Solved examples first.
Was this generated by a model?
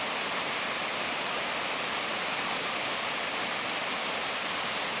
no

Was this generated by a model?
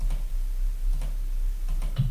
no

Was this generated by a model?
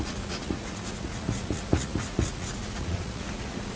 yes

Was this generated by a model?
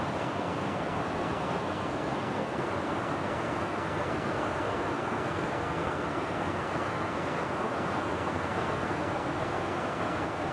yes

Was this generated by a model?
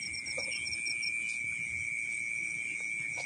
no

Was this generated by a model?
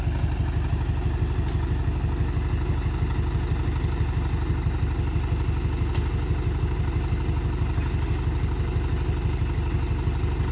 no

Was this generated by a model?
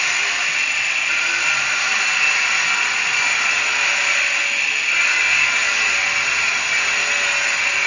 no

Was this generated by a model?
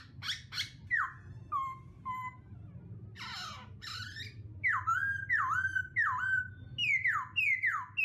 no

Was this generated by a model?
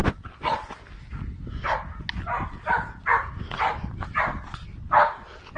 no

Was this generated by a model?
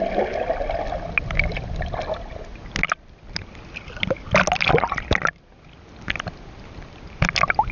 no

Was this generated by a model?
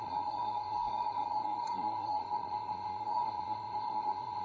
yes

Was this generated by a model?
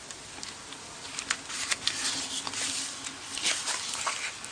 no